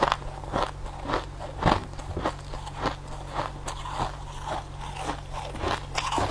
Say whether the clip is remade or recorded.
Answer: recorded